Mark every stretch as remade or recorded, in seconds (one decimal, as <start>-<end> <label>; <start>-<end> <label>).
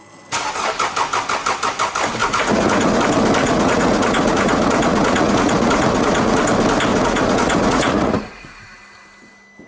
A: 0.0-2.2 recorded; 2.2-3.0 remade; 3.0-3.4 recorded; 3.4-6.4 remade; 6.4-6.9 recorded; 6.9-8.6 remade; 8.6-9.7 recorded